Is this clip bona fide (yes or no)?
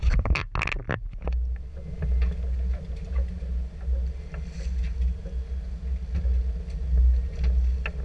yes